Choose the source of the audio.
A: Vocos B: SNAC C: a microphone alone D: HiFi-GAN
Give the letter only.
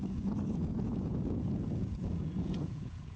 A